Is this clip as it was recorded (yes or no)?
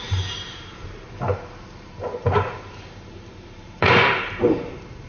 no